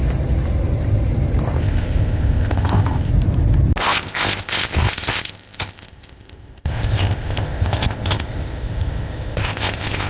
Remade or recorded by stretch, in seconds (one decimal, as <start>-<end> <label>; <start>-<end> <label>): 0.0-1.6 recorded; 1.6-3.1 remade; 3.1-3.8 recorded; 3.8-10.1 remade